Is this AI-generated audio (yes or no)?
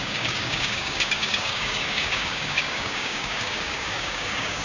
yes